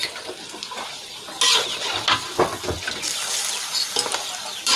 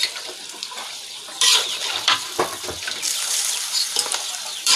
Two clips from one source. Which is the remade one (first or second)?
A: second